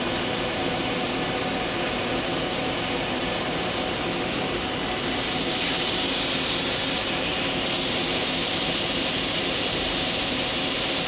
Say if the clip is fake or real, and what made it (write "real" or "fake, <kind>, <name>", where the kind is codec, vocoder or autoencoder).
fake, vocoder, BigVGAN v2